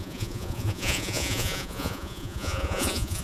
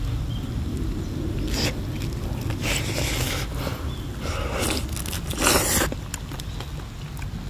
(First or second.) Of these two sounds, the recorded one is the second